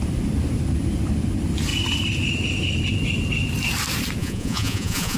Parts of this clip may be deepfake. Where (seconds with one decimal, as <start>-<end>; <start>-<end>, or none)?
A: 4.2-5.2